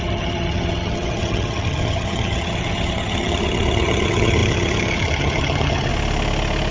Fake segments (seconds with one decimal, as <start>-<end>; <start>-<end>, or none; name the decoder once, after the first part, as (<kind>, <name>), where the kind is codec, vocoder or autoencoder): 0.0-5.9 (vocoder, HiFi-GAN)